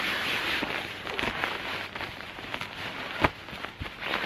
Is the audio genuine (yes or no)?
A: yes